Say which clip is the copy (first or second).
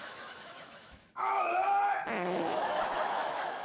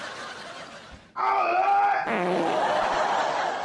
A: first